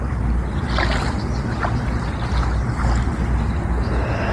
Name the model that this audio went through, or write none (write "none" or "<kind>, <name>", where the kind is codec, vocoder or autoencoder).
none